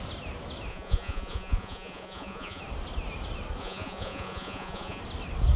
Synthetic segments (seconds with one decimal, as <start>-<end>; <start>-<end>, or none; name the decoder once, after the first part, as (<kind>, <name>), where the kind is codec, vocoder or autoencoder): 0.7-2.6 (vocoder, Vocos); 3.6-5.0